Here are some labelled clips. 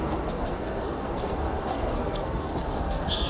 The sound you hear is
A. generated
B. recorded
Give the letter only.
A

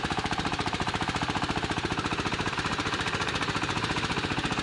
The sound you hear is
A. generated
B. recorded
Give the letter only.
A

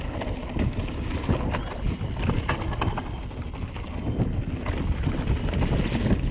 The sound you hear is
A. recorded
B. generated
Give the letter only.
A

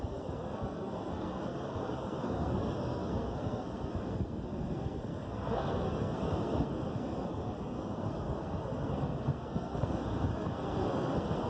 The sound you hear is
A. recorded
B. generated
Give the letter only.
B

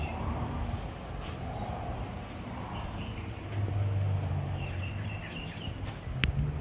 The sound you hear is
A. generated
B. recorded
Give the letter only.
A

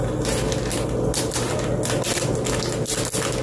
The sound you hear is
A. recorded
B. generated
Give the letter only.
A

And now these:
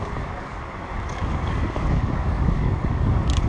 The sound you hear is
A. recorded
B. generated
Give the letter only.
B